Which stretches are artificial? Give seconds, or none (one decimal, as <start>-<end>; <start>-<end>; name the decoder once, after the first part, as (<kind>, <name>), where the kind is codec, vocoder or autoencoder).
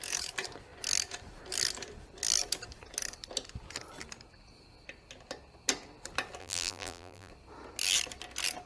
6.4-7.3 (vocoder, BigVGAN v2)